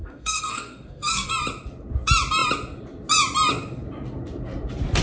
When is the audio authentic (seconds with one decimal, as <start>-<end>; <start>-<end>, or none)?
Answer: 1.3-5.0